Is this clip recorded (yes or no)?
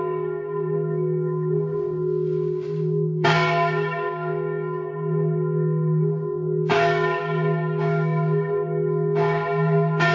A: no